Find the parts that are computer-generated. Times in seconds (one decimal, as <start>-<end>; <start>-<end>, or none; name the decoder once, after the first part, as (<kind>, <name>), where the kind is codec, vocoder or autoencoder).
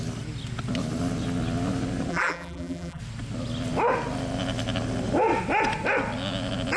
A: 2.1-3.0 (vocoder, BigVGAN v2)